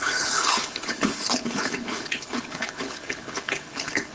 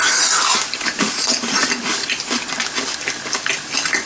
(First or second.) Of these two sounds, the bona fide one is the second